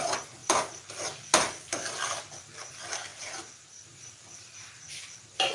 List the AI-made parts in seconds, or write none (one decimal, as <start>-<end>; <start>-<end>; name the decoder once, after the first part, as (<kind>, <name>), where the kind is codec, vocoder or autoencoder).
none